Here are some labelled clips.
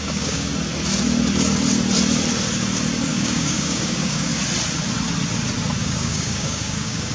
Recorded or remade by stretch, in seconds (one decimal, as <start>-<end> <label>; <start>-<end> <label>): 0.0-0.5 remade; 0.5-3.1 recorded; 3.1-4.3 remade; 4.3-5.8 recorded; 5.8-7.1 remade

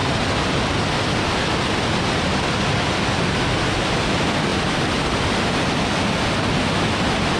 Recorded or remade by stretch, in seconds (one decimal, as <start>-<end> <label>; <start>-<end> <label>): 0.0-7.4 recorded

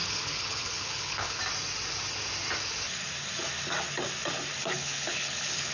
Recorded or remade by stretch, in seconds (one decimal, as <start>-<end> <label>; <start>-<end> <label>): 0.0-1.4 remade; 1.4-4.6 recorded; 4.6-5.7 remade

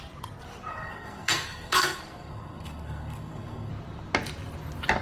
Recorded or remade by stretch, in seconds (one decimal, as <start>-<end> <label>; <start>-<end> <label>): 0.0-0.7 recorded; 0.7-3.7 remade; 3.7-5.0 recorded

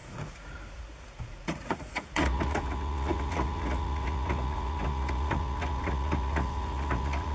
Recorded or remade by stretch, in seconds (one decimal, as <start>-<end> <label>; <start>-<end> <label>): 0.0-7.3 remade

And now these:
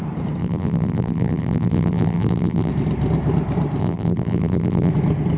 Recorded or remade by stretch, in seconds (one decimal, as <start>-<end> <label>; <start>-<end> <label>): 0.0-0.4 recorded; 0.4-2.7 remade; 2.7-3.8 recorded; 3.8-4.9 remade; 4.9-5.4 recorded